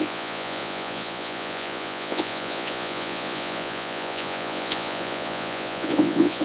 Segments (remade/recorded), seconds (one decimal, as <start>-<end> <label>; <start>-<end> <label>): 0.0-6.4 remade